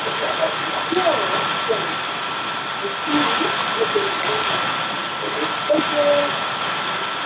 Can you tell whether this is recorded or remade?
recorded